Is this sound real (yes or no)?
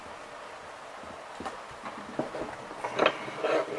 yes